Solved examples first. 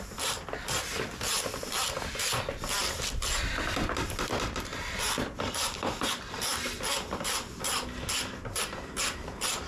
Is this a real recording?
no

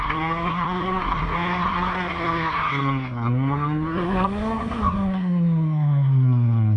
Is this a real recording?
no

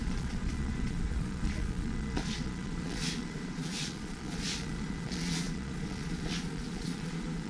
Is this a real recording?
no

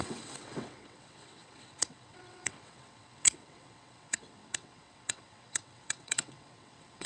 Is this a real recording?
no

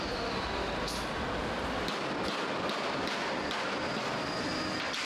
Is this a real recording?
yes